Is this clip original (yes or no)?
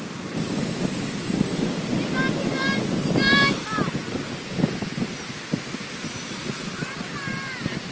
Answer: yes